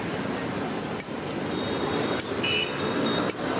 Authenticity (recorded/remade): recorded